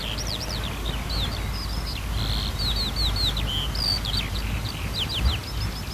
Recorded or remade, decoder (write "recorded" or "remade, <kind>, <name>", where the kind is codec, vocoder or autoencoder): recorded